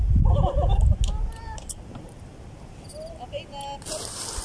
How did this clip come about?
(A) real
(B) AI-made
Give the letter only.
A